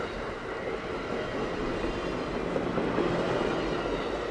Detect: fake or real real